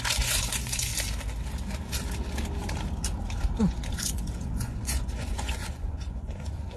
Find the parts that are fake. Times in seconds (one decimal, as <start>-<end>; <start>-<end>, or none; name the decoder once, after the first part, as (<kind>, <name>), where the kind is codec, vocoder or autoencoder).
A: 0.0-0.9 (vocoder, Vocos); 3.6-6.8